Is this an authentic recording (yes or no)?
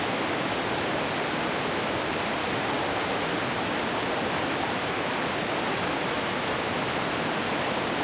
yes